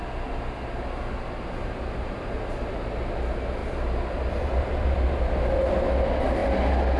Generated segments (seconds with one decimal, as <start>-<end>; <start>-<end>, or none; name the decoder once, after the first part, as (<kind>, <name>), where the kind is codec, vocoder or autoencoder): 1.6-3.0 (vocoder, BigVGAN v2)